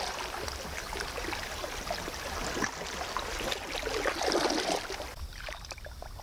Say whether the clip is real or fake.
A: real